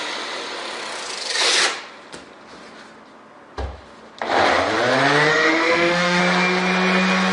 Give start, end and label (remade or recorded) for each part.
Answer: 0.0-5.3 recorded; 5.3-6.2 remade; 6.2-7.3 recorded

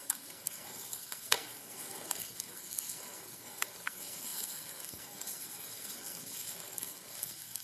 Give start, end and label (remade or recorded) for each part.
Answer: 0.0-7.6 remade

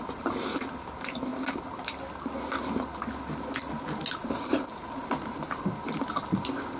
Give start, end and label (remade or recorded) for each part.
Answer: 0.0-4.2 recorded; 4.2-5.0 remade; 5.0-6.8 recorded

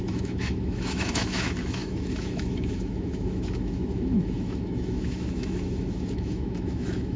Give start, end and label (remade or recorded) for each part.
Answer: 0.0-7.2 remade